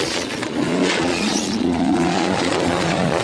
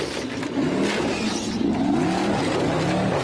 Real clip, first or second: second